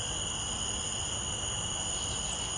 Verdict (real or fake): real